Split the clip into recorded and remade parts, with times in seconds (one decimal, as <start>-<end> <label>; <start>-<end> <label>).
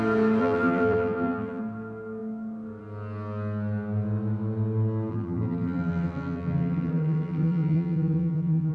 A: 0.0-0.4 recorded; 0.4-1.6 remade; 1.6-5.1 recorded; 5.1-8.7 remade